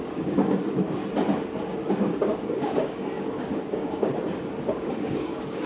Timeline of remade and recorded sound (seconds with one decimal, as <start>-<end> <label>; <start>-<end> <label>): 0.0-1.0 remade; 1.0-1.9 recorded; 1.9-4.1 remade; 4.1-4.6 recorded; 4.6-5.7 remade